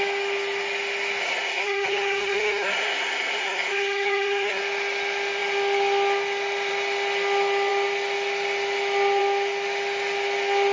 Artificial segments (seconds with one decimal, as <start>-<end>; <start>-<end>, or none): 1.2-4.6